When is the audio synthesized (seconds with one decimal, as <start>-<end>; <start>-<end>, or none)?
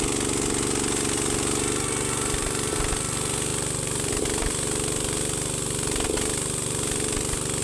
3.5-4.5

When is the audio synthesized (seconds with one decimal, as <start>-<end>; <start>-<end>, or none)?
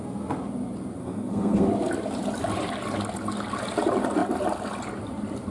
1.0-1.7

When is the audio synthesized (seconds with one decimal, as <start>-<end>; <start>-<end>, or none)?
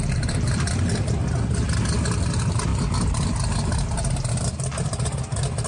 0.0-1.2; 2.2-5.7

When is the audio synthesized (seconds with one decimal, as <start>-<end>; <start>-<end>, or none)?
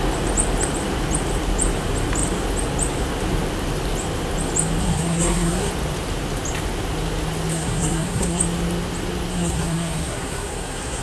4.8-5.7; 7.5-8.4; 9.3-11.0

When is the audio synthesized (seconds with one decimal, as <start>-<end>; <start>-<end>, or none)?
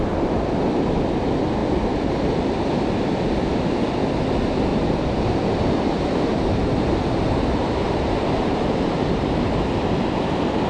4.7-9.4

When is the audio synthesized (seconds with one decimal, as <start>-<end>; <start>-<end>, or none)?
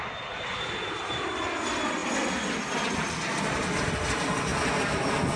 none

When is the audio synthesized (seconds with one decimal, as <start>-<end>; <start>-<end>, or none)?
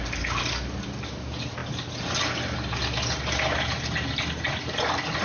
none